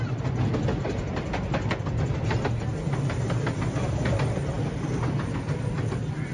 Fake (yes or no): no